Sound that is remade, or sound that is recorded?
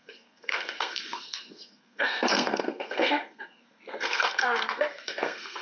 remade